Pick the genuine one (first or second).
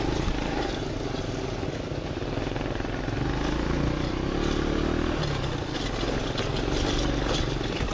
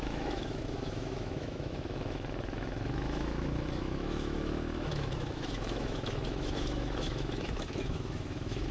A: first